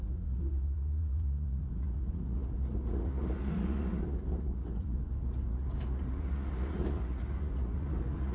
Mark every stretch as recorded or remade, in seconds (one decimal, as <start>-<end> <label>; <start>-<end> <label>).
0.0-8.3 remade